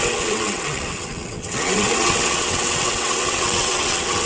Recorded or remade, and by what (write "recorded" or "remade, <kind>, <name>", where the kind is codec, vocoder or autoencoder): remade, vocoder, WaveNeXt